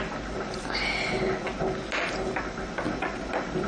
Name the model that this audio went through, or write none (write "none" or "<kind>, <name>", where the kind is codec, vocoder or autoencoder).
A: none